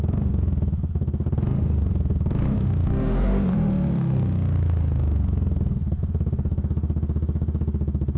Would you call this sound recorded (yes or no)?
no